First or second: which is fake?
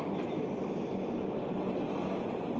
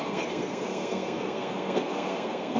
second